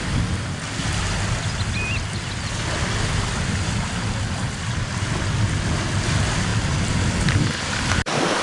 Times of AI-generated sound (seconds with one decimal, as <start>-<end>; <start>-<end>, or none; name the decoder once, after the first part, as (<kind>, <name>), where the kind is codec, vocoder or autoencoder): none